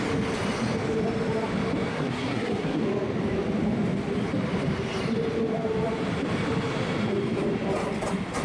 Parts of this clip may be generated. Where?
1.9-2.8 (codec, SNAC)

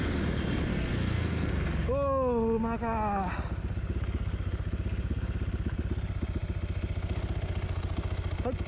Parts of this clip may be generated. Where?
0.7-1.5 (codec, SNAC)

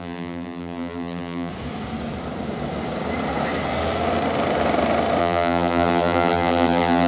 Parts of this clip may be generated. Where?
0.0-1.5 (vocoder, BigVGAN v2); 5.2-7.1

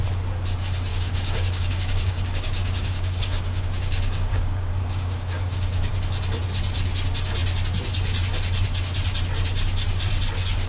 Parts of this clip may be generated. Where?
0.9-5.9 (codec, DAC)

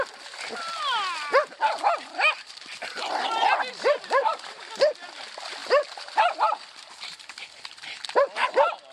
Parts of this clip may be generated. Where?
none